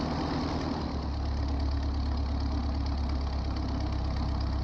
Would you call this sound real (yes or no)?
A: yes